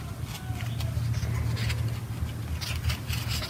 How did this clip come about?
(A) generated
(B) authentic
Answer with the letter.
B